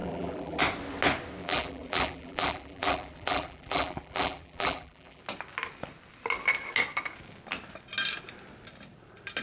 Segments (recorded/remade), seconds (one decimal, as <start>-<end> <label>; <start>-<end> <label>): 0.0-0.6 remade; 0.6-1.4 recorded; 1.4-5.2 remade; 5.2-9.4 recorded